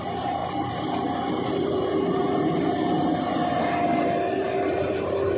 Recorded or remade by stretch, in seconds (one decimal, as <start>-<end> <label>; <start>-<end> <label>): 0.0-0.4 recorded; 0.4-3.6 remade; 3.6-5.4 recorded